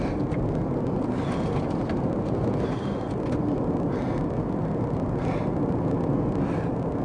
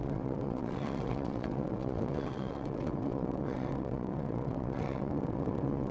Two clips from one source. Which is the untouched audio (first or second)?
first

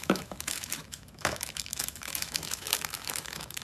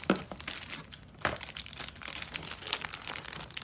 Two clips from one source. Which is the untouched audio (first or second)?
second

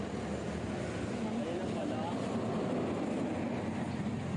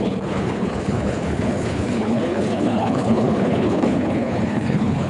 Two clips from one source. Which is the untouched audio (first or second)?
first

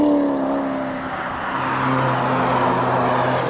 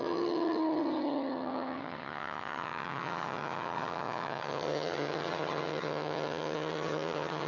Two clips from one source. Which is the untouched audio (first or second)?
first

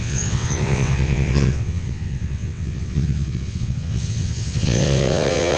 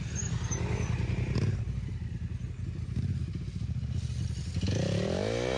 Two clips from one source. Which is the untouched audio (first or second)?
second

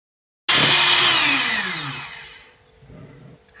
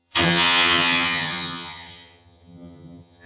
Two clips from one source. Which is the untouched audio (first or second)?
first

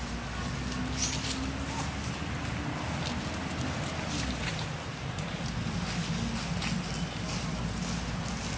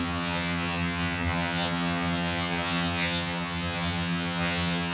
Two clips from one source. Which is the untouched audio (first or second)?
first